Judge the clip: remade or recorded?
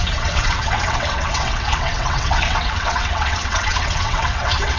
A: remade